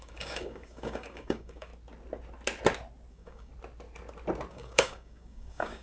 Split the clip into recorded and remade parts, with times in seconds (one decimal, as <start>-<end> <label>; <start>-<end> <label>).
0.0-1.7 remade; 1.7-3.1 recorded; 3.1-3.5 remade; 3.5-4.5 recorded; 4.5-5.8 remade